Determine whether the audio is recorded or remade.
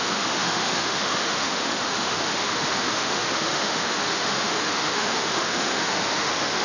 remade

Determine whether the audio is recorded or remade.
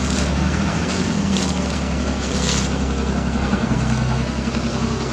remade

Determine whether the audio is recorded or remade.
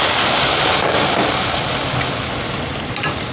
recorded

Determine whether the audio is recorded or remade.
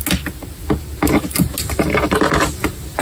recorded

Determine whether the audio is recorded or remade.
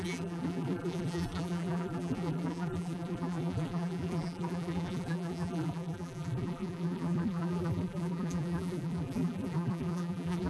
remade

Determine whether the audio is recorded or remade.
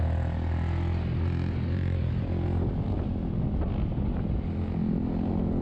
recorded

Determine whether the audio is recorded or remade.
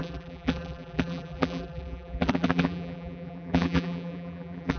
remade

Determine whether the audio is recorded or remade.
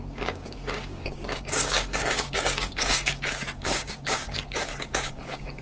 remade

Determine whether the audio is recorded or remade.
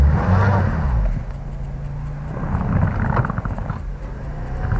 recorded